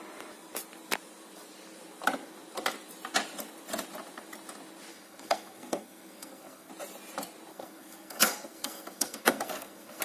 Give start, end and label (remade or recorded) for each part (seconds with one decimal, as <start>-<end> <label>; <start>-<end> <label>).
0.0-4.9 recorded; 4.9-6.7 remade; 6.7-7.5 recorded; 7.5-10.0 remade

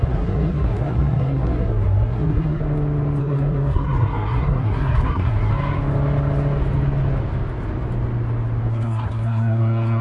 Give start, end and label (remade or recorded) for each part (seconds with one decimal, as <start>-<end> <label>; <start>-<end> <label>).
0.0-2.6 remade; 2.6-3.2 recorded; 3.2-5.5 remade; 5.5-8.7 recorded; 8.7-10.0 remade